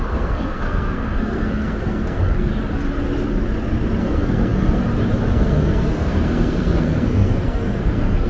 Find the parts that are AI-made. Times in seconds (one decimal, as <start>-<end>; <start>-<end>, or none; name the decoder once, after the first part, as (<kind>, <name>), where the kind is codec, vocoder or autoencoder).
0.0-2.5 (codec, SNAC); 4.0-4.8; 5.3-8.3